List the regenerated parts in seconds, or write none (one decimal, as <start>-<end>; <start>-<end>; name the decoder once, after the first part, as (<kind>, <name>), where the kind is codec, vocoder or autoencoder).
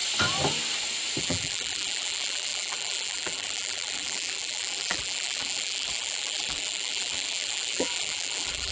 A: 1.2-8.7 (vocoder, BigVGAN v2)